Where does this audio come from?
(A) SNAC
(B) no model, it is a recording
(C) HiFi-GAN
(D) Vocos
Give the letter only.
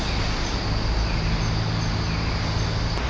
B